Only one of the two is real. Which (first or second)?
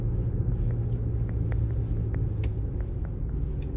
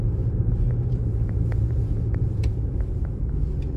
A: first